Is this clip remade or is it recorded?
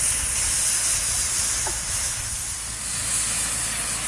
recorded